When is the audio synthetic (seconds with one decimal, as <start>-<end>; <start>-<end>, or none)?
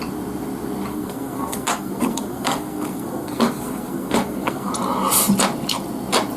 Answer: 0.9-4.7